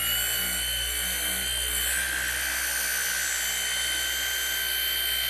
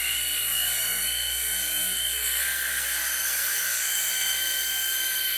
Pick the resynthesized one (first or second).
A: second